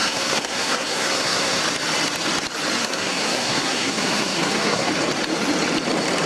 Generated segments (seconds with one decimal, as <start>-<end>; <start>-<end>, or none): 0.0-1.6; 2.8-4.9